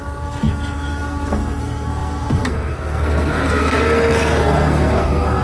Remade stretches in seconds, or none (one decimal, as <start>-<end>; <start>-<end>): 0.0-5.4